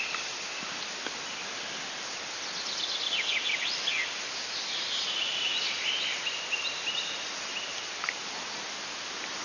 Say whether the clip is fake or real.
real